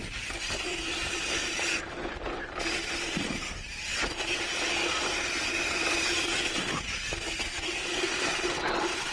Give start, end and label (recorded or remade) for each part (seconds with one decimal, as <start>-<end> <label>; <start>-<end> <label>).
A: 0.0-9.1 recorded